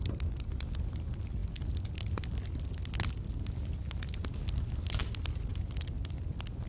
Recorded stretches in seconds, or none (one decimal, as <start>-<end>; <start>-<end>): 0.0-6.7